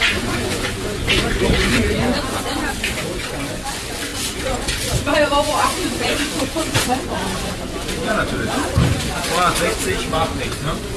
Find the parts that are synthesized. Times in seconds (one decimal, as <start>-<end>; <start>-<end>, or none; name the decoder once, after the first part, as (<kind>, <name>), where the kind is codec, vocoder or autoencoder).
0.0-11.0 (vocoder, Vocos)